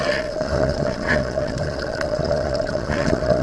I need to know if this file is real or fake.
fake